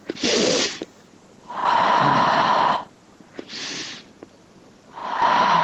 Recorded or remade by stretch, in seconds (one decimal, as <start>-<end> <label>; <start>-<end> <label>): 0.0-1.6 recorded; 1.6-2.4 remade; 2.4-5.6 recorded